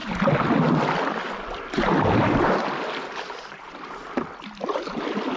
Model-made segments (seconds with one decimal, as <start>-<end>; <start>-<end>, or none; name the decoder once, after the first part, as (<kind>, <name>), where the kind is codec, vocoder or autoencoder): none